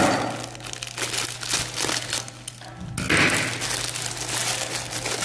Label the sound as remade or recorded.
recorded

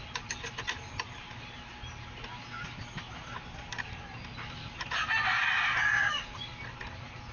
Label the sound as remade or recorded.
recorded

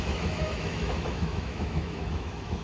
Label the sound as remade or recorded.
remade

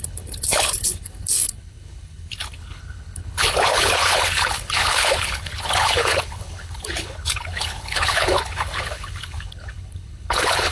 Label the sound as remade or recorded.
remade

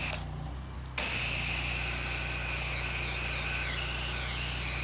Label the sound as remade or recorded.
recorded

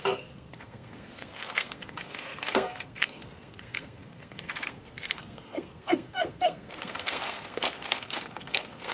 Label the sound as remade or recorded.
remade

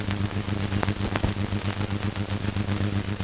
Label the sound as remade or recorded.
recorded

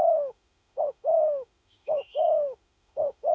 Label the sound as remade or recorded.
remade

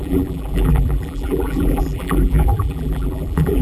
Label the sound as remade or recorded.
remade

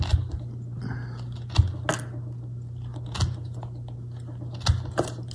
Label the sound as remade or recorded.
recorded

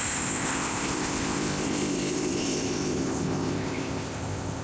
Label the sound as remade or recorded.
remade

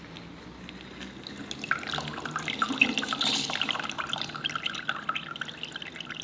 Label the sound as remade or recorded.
recorded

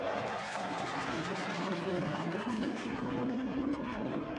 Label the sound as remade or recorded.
remade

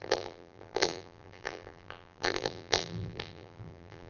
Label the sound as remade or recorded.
remade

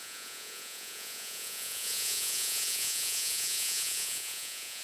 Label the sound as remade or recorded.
remade